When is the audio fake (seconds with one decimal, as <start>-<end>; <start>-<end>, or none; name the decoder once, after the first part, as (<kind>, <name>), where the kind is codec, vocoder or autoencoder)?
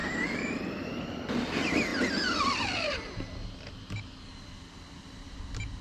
0.0-1.5 (vocoder, BigVGAN v2)